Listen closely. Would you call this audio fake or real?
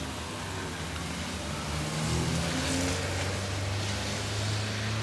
real